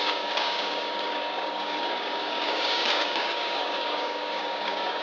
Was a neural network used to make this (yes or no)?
yes